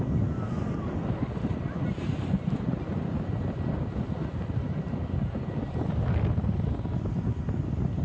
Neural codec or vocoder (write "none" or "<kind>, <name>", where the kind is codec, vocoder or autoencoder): none